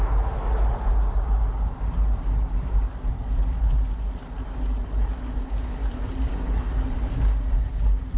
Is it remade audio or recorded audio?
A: recorded